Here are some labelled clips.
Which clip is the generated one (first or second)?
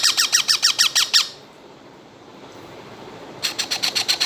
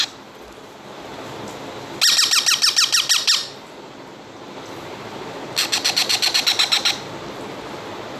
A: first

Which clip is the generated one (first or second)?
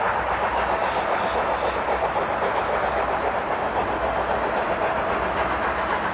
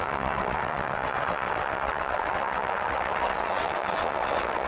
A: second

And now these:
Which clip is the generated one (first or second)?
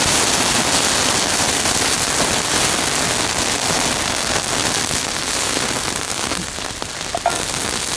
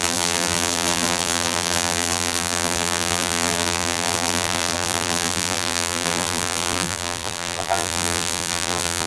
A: second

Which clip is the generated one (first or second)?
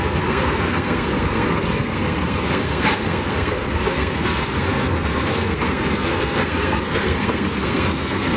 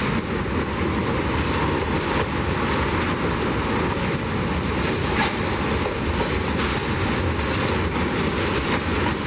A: first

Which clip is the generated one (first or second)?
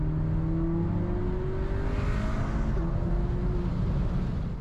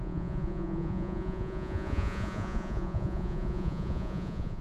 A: second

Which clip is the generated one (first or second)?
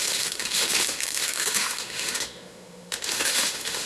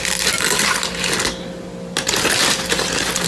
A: first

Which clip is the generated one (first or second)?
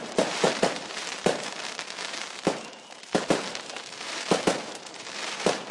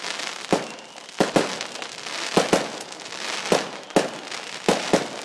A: first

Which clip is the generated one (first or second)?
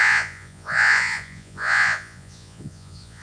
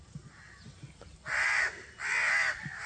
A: first